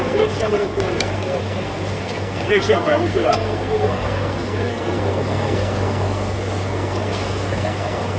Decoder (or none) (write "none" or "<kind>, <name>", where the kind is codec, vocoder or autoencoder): codec, SNAC